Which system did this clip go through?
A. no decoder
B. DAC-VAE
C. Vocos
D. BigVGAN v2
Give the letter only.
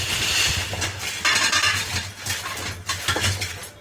A